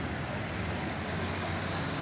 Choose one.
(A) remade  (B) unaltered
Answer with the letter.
B